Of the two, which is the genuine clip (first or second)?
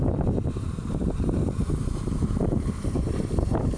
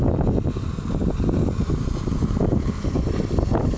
second